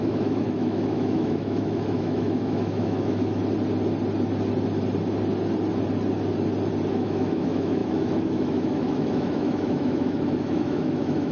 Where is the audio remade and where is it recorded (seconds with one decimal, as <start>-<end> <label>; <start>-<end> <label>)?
0.0-3.4 remade; 3.4-6.9 recorded; 6.9-11.3 remade